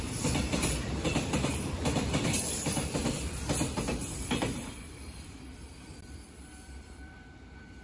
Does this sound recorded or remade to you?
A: remade